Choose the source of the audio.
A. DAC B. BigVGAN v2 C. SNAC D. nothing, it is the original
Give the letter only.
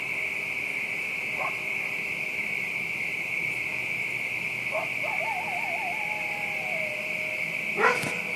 D